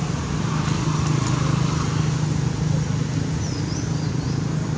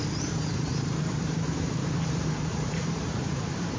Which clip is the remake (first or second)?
second